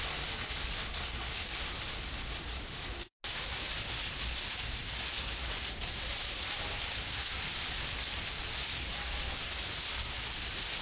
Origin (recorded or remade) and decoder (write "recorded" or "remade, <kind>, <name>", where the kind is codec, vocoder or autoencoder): recorded